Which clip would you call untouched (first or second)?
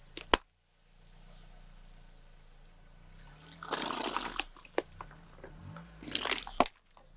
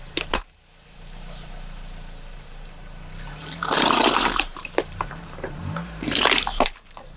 first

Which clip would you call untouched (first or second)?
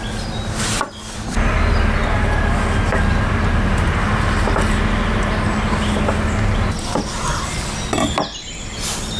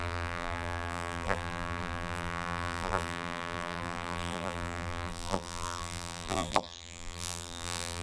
first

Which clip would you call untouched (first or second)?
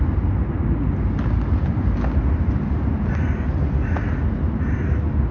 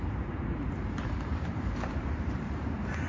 first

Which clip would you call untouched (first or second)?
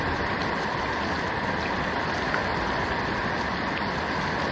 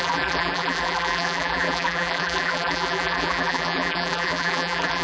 first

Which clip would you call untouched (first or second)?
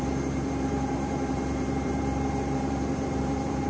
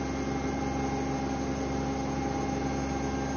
second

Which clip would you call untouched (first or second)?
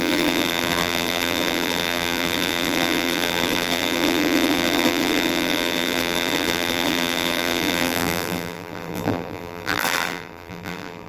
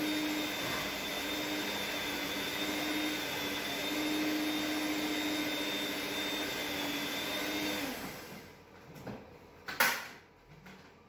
second